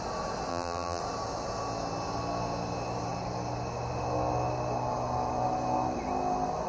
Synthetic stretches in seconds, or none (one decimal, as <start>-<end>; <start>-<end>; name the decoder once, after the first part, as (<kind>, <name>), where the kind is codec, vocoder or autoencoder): 0.5-1.0 (vocoder, BigVGAN v2)